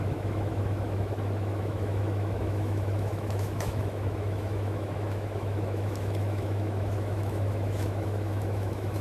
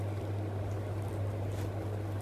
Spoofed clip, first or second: first